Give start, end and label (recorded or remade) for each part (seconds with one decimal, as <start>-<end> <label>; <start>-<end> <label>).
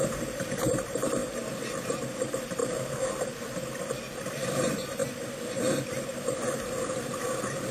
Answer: 0.0-2.6 remade; 2.6-3.4 recorded; 3.4-5.0 remade; 5.0-6.2 recorded; 6.2-7.7 remade